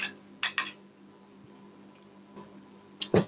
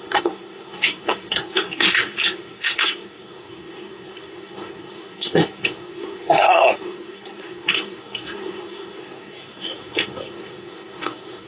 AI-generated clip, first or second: second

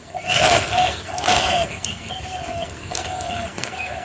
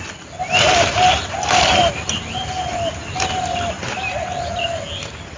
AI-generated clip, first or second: first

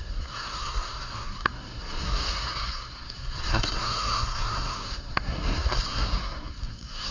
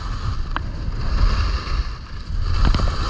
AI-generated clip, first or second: first